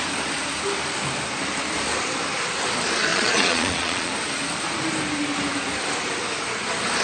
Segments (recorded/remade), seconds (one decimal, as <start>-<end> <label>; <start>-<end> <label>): 0.0-3.1 recorded; 3.1-4.1 remade; 4.1-7.0 recorded